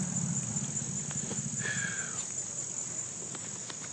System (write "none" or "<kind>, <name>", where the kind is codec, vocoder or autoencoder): none